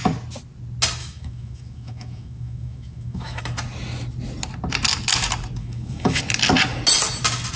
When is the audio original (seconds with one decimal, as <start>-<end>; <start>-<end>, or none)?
0.0-1.0; 3.4-5.6; 6.2-7.6